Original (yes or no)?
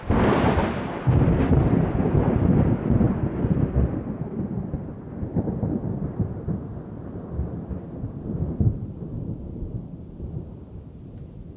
no